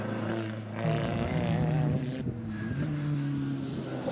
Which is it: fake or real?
real